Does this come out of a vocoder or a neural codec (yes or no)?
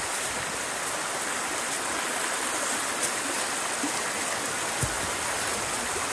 no